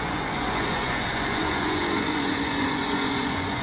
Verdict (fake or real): fake